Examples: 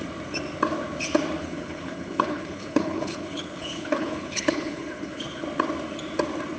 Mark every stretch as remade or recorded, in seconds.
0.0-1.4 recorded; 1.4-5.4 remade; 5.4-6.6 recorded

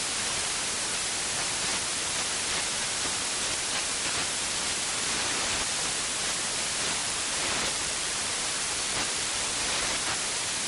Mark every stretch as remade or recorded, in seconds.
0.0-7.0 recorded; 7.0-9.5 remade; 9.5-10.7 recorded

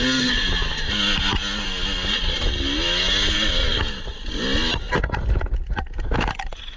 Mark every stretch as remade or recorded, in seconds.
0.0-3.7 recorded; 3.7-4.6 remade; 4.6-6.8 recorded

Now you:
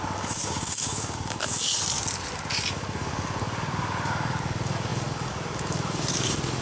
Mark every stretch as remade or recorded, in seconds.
0.0-1.7 remade; 1.7-2.7 recorded; 2.7-6.6 remade